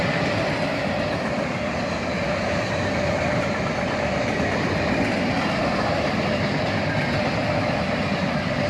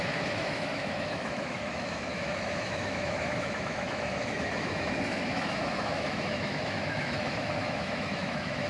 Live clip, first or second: first